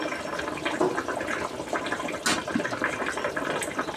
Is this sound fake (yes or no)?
no